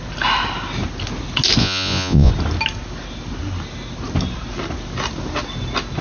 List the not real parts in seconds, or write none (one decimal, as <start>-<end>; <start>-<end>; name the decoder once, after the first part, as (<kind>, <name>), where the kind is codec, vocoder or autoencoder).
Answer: 1.6-2.3 (vocoder, Vocos)